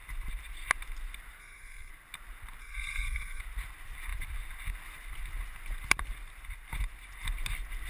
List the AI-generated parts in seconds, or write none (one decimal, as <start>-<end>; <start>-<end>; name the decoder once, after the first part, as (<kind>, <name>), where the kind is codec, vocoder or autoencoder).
1.4-1.9 (codec, SNAC); 2.6-3.4